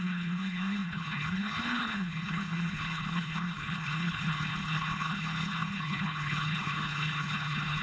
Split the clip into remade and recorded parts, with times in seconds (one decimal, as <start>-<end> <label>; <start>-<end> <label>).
0.0-7.8 remade